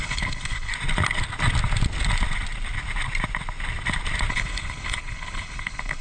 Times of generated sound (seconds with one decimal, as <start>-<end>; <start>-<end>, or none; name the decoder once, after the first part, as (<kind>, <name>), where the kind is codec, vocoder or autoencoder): 0.0-0.7 (codec, HILCodec); 4.3-6.0